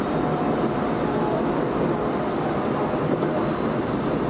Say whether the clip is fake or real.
real